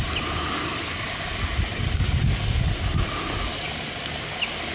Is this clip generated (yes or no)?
no